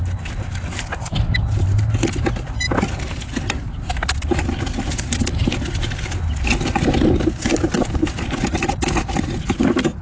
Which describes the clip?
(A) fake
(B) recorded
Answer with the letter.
B